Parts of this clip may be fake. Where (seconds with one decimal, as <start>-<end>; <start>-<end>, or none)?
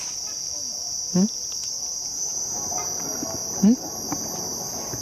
none